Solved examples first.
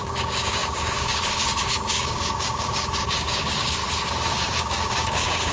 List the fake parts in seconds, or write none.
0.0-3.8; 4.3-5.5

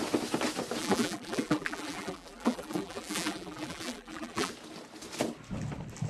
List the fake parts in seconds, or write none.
0.8-4.5

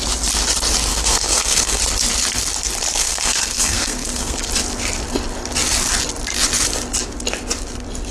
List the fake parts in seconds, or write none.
0.9-1.8; 3.0-4.5

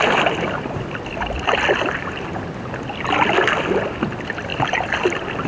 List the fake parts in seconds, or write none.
none

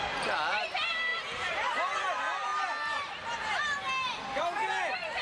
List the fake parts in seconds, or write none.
2.5-5.2

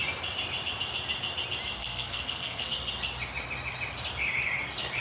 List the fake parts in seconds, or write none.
1.8-2.7